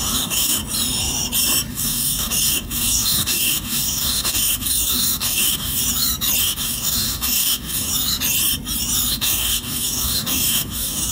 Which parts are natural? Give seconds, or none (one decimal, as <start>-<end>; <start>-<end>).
0.6-1.7; 5.8-6.4; 7.9-9.1